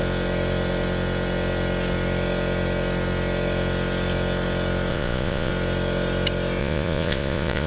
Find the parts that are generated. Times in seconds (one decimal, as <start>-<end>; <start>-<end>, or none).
4.9-5.5; 6.6-7.7